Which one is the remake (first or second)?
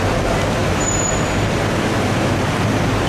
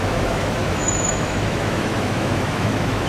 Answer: second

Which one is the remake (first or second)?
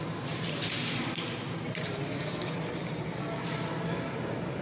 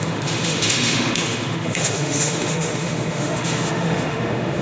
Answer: second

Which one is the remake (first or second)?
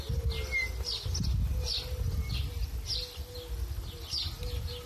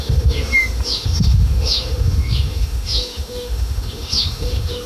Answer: second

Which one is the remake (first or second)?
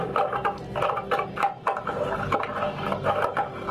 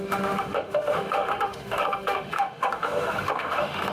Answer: second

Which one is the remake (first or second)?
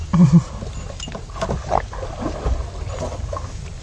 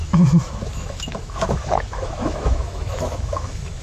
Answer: second